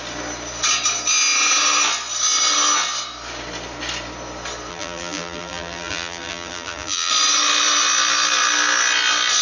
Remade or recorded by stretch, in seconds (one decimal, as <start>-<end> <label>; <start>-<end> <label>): 0.0-4.7 recorded; 4.7-7.1 remade; 7.1-9.4 recorded